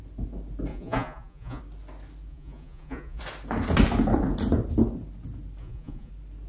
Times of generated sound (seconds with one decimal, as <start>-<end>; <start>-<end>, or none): 0.7-1.6; 2.3-3.2; 5.6-6.1